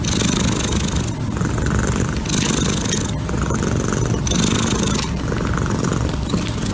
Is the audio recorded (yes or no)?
yes